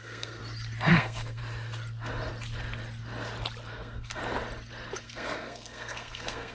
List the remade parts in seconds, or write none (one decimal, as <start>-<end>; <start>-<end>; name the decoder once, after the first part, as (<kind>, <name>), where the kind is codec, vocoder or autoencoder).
0.0-0.4 (codec, SNAC); 0.9-1.4; 3.7-4.2; 5.0-6.5